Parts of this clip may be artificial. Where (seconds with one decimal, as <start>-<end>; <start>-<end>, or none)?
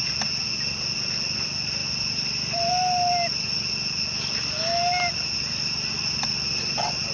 1.8-2.7